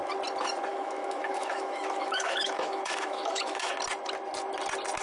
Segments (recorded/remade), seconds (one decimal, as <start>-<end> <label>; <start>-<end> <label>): 0.0-0.7 recorded; 0.7-3.7 remade; 3.7-5.0 recorded